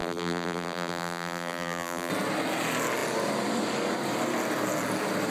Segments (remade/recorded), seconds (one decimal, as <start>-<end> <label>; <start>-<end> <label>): 0.0-2.1 remade; 2.1-5.3 recorded